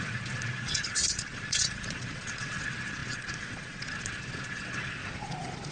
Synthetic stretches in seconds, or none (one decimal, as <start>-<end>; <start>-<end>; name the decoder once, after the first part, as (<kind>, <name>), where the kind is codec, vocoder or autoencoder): 0.0-5.7 (vocoder, Vocos)